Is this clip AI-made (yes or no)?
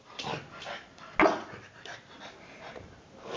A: no